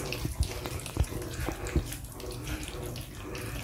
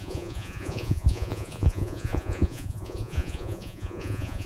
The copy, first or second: second